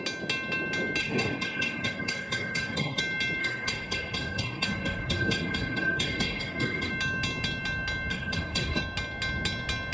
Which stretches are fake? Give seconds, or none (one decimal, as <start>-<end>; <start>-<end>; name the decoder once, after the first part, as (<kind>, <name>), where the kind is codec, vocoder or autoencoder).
1.0-3.0 (codec, SNAC); 3.4-6.9; 8.1-8.8